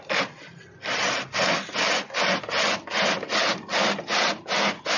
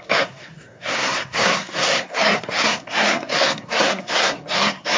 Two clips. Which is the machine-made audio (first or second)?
second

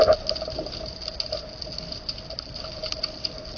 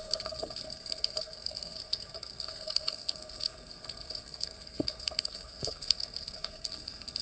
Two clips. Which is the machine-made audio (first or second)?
second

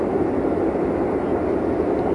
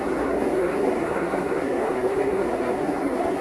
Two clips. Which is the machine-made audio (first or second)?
second